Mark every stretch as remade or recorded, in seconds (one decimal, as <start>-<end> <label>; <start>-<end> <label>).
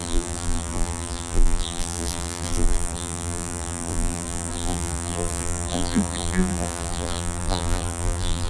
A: 0.0-8.5 remade